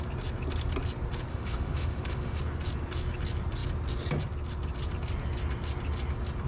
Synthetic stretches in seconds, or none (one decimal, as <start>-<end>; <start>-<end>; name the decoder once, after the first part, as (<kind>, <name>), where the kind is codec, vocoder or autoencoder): 1.3-2.4 (autoencoder, DAC-VAE)